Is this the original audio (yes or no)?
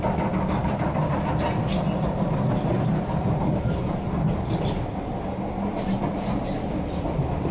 yes